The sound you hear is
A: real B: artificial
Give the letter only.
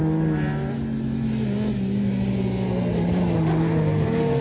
A